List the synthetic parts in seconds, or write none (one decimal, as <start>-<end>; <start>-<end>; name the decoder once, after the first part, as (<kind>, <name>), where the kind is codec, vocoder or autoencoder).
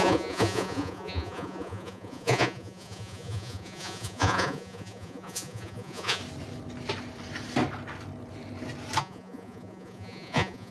0.0-6.2 (vocoder, Vocos); 9.0-10.7